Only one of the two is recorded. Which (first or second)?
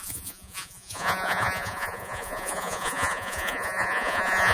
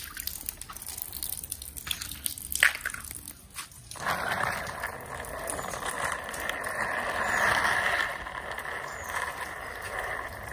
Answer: second